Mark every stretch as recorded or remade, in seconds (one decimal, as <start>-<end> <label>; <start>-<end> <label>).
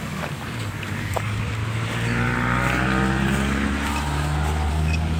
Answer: 0.0-1.6 remade; 1.6-4.7 recorded; 4.7-5.2 remade